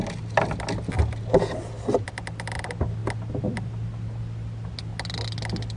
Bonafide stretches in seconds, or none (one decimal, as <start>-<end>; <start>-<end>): 0.0-5.8